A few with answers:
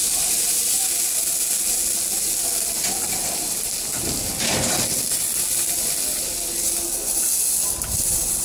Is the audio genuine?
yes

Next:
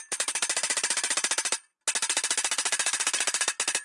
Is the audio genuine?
yes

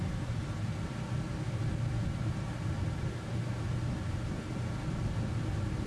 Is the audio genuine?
yes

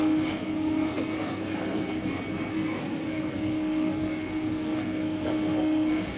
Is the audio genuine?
no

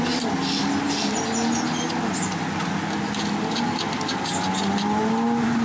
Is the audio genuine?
yes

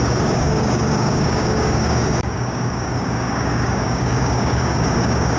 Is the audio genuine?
no